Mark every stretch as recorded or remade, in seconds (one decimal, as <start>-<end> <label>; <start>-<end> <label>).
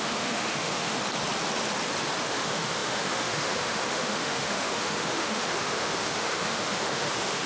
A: 0.0-1.0 remade; 1.0-2.2 recorded; 2.2-7.5 remade